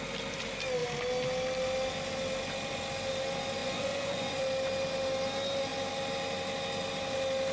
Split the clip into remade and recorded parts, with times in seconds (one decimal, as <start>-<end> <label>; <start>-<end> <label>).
0.0-3.6 recorded; 3.6-4.4 remade; 4.4-7.5 recorded